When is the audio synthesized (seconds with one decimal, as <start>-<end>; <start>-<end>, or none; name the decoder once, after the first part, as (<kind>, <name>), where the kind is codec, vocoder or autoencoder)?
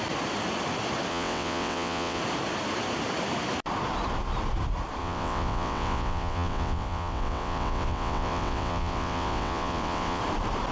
1.1-2.2 (vocoder, WaveNeXt); 5.0-10.2